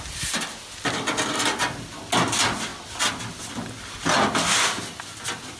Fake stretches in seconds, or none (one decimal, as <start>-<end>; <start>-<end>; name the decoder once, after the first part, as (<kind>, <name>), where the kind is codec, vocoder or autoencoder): none